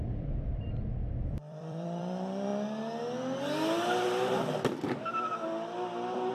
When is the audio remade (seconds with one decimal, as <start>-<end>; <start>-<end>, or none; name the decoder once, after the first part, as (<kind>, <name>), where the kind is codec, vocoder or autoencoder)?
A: 0.0-2.5 (vocoder, BigVGAN v2)